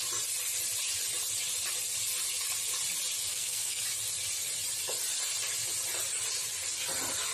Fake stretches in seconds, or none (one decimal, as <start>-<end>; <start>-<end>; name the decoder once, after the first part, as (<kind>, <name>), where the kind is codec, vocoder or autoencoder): 3.3-3.8 (codec, SNAC)